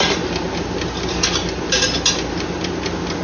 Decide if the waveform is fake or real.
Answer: real